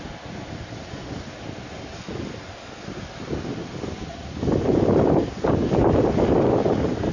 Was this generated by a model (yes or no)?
no